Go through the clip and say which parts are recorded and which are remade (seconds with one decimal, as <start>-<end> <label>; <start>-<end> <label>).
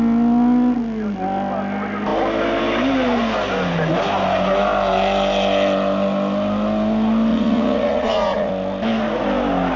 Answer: 0.0-7.3 recorded; 7.3-8.5 remade; 8.5-9.8 recorded